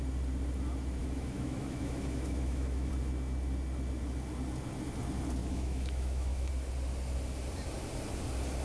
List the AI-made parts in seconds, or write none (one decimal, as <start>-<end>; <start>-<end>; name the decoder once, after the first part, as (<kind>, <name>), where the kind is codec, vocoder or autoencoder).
1.0-2.9 (autoencoder, DAC-VAE); 5.4-6.5